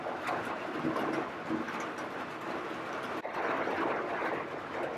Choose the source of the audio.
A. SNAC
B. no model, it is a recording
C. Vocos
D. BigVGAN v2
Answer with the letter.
B